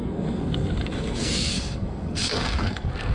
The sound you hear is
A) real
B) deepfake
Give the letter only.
B